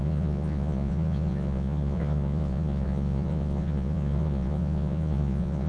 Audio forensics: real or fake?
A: fake